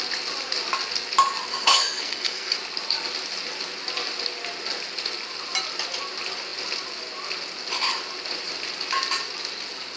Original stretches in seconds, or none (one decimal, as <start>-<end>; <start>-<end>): 0.0-1.5; 2.6-10.0